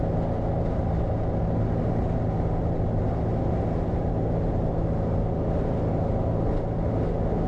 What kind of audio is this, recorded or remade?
recorded